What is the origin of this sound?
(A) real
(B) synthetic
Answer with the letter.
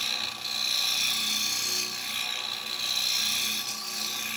A